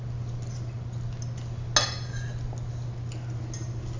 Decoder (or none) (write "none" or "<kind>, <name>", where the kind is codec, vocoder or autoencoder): none